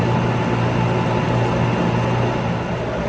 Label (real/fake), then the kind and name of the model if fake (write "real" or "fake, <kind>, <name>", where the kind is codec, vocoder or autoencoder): real